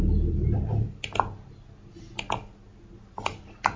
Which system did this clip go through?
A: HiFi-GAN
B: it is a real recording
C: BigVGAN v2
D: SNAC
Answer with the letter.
B